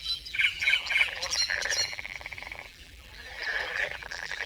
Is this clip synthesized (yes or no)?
yes